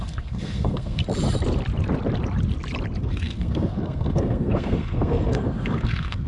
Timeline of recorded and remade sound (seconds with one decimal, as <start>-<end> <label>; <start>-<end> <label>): 0.0-1.0 remade; 1.0-3.0 recorded; 3.0-6.3 remade